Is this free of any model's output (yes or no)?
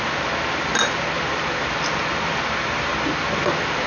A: yes